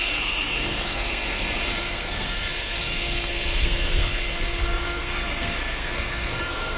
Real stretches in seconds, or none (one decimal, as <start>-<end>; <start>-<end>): 1.2-1.8

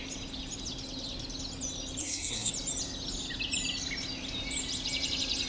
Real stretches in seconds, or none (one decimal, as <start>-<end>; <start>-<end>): 0.0-2.0; 2.5-5.5

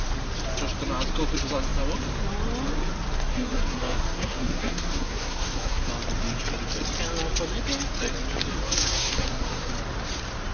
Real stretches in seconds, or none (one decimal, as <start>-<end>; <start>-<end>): 0.0-3.3; 5.9-8.5; 9.7-10.5

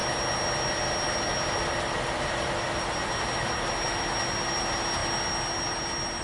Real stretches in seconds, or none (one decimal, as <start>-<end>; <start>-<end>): 0.0-6.2

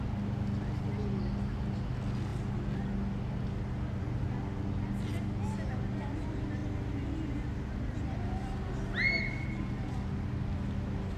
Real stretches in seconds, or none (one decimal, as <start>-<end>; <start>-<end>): 0.0-11.2

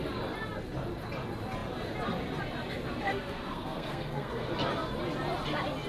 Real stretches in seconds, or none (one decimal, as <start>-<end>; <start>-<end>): 0.0-3.1; 4.5-5.9